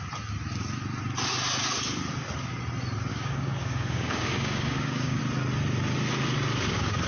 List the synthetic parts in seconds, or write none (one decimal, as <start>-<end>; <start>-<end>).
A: 3.1-5.2